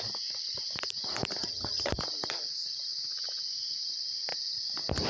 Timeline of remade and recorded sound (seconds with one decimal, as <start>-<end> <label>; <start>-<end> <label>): 0.0-1.4 recorded; 1.4-1.9 remade; 1.9-5.1 recorded

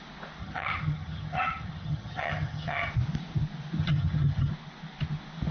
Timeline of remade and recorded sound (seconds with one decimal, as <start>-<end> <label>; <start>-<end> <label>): 0.0-0.4 recorded; 0.4-2.9 remade; 2.9-3.8 recorded; 3.8-4.5 remade; 4.5-5.5 recorded

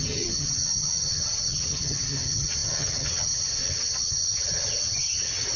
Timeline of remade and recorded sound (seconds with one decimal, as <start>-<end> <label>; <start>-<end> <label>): 0.0-5.6 remade